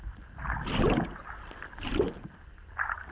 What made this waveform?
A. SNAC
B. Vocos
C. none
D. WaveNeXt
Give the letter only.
C